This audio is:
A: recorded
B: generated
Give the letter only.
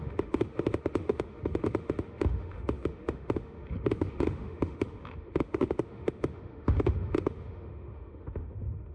B